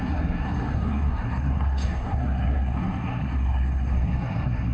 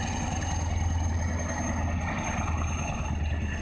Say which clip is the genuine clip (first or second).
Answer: second